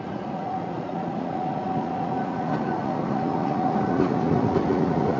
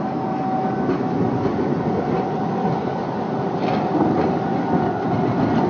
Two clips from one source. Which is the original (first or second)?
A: second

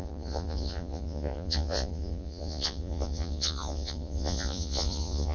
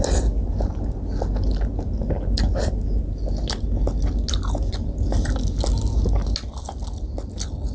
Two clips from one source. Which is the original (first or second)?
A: second